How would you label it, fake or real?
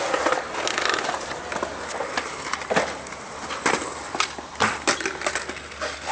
real